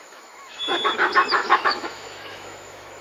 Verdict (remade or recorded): remade